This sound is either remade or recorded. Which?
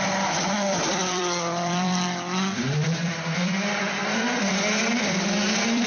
remade